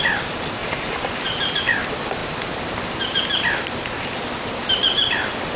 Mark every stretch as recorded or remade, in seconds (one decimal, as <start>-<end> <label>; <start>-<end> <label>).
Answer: 0.0-0.6 recorded; 0.6-1.6 remade; 1.6-5.6 recorded